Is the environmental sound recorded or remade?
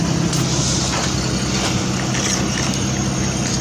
recorded